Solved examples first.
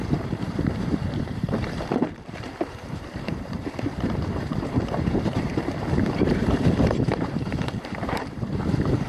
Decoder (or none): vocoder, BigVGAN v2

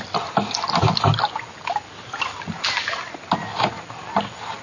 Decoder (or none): none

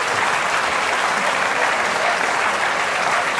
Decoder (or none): none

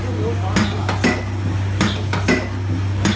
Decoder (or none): none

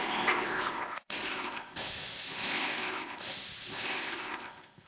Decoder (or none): codec, ZipCodec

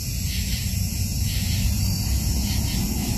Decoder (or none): none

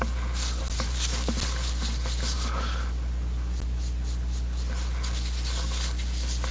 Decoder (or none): none